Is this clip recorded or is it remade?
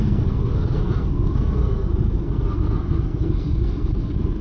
remade